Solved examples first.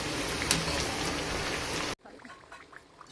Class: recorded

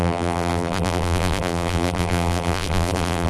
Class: remade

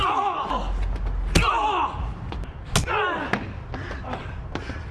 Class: recorded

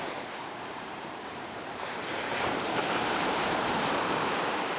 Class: remade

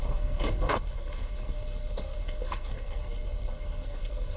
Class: remade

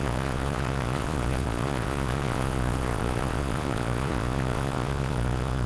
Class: remade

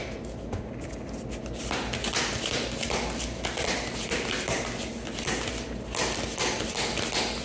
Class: recorded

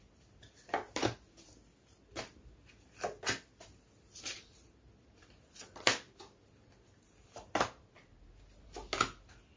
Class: recorded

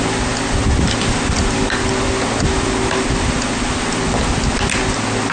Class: recorded